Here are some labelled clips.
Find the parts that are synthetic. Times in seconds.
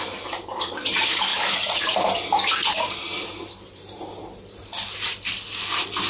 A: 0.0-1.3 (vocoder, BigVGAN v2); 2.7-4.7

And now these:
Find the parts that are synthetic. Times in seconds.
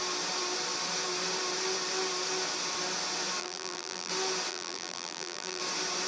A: 3.4-4.1 (vocoder, BigVGAN v2); 4.5-5.6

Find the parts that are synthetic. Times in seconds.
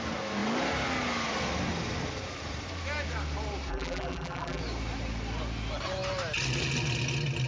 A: 3.7-4.6 (vocoder, BigVGAN v2)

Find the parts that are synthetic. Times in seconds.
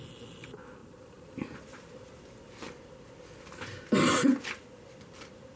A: 0.8-2.1 (vocoder, BigVGAN v2); 4.3-5.6